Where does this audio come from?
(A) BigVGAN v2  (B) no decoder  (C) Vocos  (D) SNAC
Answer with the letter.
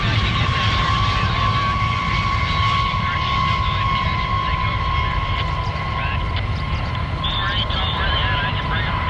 A